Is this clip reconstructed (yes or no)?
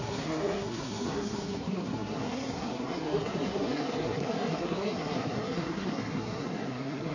yes